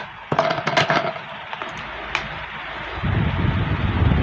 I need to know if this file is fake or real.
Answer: real